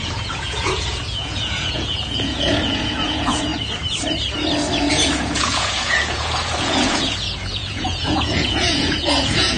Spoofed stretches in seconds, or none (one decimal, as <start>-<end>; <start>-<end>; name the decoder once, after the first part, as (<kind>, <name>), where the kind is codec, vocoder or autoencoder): 0.0-3.5 (vocoder, Vocos); 4.9-9.6

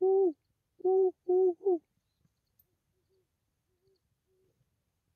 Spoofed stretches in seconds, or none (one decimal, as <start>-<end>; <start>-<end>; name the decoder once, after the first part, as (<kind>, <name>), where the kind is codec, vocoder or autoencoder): none

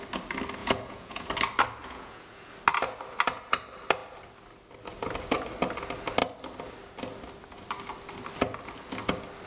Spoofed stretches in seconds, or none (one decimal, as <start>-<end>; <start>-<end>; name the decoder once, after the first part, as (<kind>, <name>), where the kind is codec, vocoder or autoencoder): 0.6-1.3 (vocoder, Vocos); 1.8-2.5

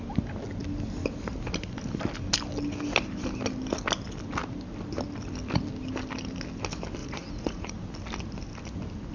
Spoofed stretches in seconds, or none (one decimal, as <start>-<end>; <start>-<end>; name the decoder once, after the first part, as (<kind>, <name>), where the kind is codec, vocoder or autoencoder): 7.0-7.7 (vocoder, Vocos)

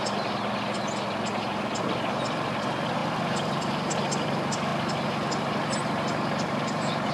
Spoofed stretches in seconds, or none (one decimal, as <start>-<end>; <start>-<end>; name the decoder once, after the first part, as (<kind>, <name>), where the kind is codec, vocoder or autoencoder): none